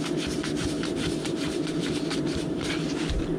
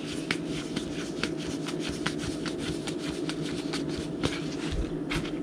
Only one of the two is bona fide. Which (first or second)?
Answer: second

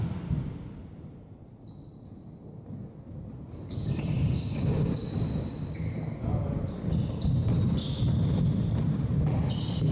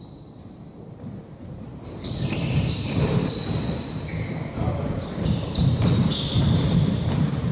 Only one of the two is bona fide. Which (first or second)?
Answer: first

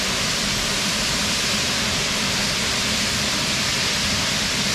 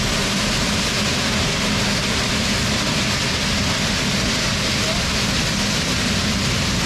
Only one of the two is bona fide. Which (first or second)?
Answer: second